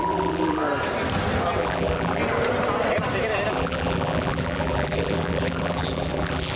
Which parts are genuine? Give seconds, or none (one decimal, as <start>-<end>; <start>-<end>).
0.6-1.6; 2.2-3.5